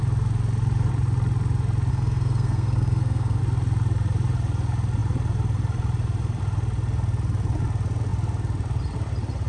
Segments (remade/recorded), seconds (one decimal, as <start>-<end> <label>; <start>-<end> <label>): 0.0-1.9 recorded; 1.9-3.4 remade; 3.4-9.5 recorded